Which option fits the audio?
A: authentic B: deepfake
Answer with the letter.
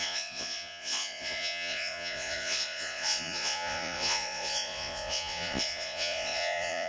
B